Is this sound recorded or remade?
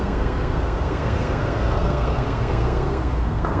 remade